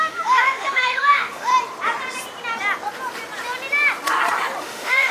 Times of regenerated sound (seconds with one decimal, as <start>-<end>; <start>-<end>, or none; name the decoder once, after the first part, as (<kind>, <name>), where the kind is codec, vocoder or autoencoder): 0.0-1.5 (autoencoder, DAC-VAE); 4.6-5.1